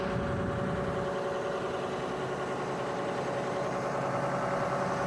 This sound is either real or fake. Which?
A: real